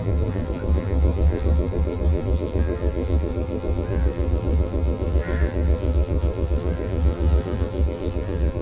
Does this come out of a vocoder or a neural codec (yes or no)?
yes